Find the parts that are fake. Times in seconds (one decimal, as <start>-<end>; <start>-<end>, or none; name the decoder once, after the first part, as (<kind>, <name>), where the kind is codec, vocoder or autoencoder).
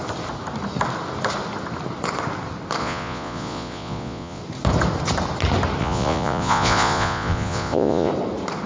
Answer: 2.8-4.4 (vocoder, Vocos); 5.8-8.1